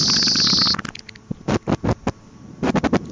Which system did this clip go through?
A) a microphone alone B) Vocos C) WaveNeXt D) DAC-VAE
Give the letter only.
A